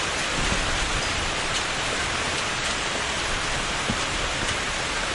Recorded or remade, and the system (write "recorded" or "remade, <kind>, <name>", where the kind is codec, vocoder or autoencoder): remade, vocoder, BigVGAN v2